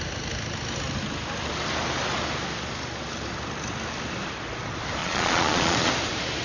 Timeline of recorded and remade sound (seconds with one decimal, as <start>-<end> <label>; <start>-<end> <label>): 0.0-5.0 recorded; 5.0-5.9 remade; 5.9-6.4 recorded